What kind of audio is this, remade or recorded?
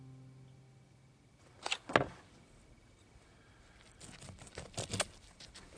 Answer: recorded